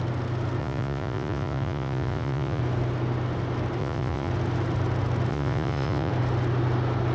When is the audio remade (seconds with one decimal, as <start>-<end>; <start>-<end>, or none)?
0.6-2.6; 3.8-4.3; 5.3-6.1